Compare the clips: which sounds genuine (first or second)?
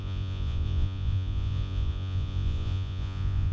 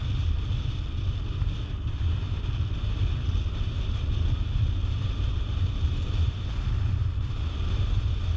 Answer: second